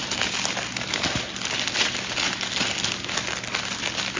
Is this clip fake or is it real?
real